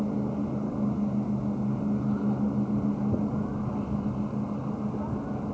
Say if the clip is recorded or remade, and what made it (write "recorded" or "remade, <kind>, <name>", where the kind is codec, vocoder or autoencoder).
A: recorded